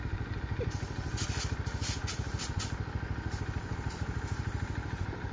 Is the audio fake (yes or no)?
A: no